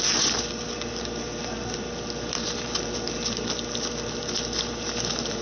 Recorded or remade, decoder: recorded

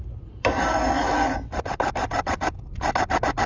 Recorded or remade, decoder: recorded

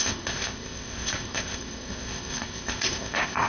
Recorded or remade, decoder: remade, codec, ZipCodec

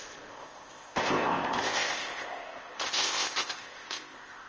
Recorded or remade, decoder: remade, codec, ZipCodec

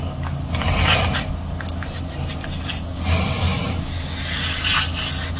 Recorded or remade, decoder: recorded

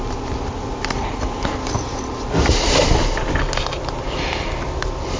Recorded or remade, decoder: recorded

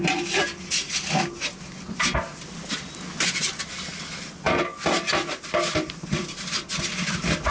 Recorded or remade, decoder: recorded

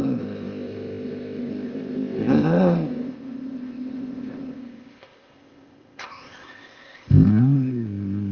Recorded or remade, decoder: remade, codec, ZipCodec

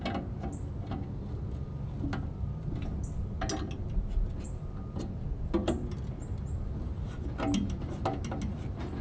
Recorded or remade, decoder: recorded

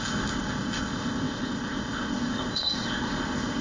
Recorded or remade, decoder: remade, codec, ZipCodec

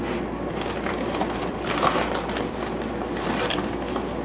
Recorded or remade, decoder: recorded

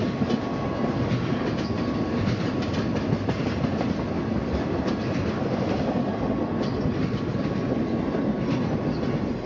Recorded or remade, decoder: recorded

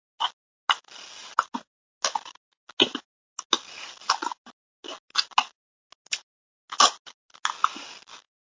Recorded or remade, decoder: recorded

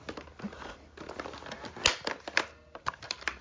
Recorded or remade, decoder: recorded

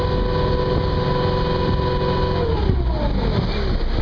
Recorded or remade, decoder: recorded